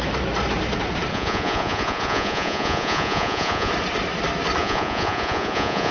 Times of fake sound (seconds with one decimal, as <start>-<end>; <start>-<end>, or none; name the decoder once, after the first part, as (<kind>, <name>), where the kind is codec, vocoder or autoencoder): 1.1-3.7 (vocoder, Vocos); 4.6-5.9